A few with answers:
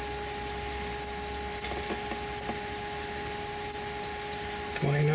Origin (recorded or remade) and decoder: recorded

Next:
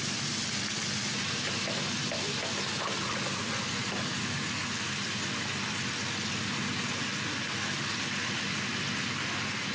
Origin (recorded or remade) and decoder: recorded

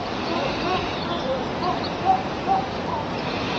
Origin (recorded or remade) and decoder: remade, vocoder, BigVGAN v2